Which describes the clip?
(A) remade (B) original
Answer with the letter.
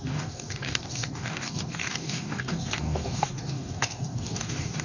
A